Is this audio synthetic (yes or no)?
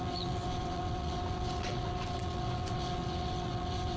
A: yes